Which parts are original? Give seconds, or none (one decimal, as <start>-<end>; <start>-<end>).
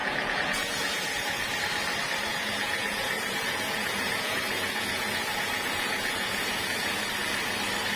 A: 1.6-2.3; 7.1-8.0